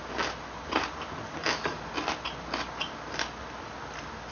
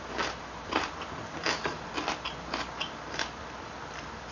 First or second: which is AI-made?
second